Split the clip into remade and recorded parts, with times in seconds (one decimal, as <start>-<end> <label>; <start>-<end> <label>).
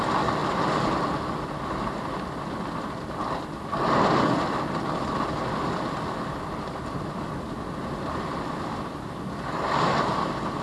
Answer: 0.0-0.4 recorded; 0.4-1.8 remade; 1.8-10.6 recorded